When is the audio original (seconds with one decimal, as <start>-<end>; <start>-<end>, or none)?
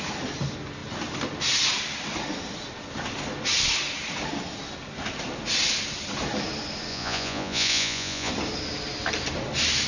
0.0-6.9; 8.3-9.9